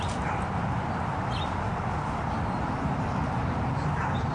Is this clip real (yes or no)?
yes